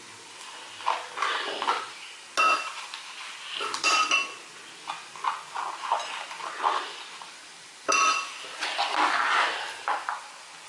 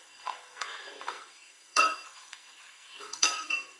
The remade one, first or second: second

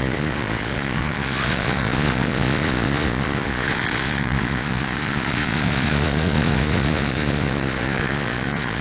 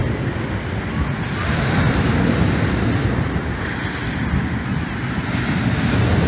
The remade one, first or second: first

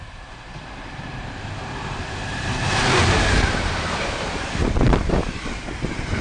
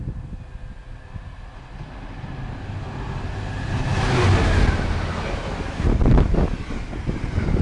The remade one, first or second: first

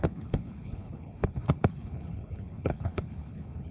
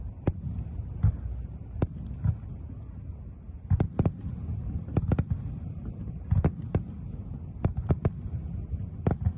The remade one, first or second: first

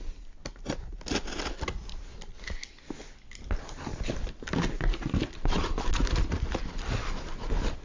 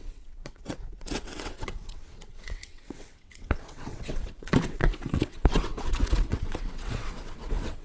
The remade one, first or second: second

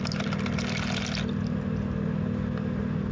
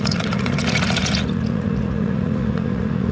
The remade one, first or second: second